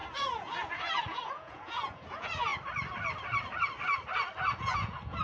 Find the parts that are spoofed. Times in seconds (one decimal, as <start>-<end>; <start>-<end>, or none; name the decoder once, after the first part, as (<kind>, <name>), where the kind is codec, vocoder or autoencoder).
0.0-2.5 (vocoder, Vocos); 4.5-5.2